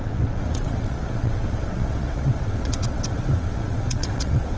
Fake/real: fake